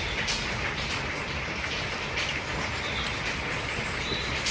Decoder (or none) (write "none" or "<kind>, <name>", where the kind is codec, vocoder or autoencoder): none